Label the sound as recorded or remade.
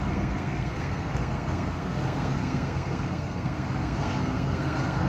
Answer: remade